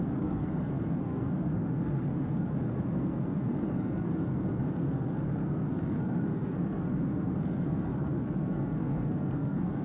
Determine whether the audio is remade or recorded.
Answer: remade